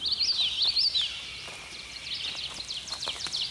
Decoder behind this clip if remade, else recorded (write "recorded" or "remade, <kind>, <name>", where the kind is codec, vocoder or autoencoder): recorded